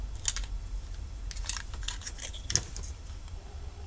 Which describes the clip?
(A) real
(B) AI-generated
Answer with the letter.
A